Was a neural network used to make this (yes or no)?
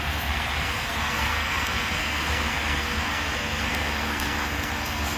yes